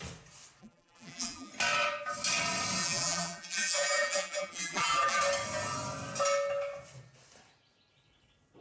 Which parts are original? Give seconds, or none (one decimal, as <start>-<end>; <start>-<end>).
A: 0.0-0.6; 1.5-2.8; 5.2-8.6